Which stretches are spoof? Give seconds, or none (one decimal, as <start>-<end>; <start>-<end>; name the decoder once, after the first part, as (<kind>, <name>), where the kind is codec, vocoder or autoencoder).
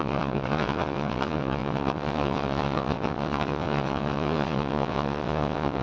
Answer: 0.0-5.8 (vocoder, WaveNeXt)